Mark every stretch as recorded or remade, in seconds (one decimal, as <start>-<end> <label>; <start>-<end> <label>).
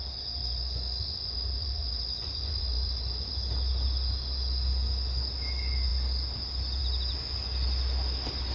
0.0-0.4 recorded; 0.4-3.3 remade; 3.3-8.5 recorded